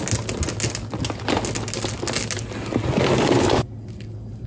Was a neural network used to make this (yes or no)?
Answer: no